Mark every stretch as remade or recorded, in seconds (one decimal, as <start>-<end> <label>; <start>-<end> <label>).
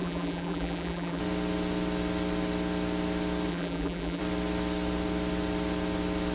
0.0-1.2 remade; 1.2-3.5 recorded; 3.5-4.2 remade; 4.2-6.3 recorded